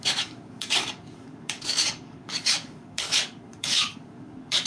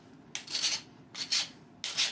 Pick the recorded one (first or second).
second